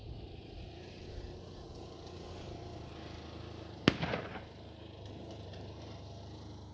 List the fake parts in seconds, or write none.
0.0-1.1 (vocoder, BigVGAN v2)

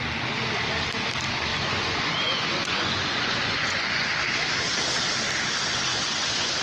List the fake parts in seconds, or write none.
1.5-4.1 (vocoder, Vocos); 5.9-6.6

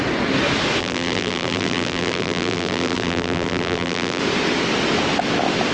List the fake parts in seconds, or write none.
0.8-4.2 (vocoder, BigVGAN v2)

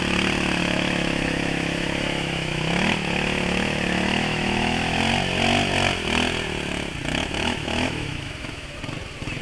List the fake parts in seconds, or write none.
0.6-5.0 (autoencoder, DAC-VAE); 7.2-8.8

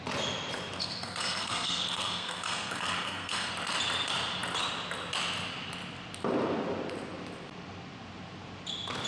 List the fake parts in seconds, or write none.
0.8-3.5 (codec, SNAC)